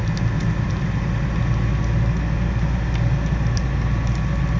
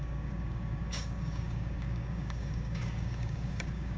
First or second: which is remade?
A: second